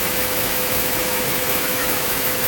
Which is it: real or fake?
fake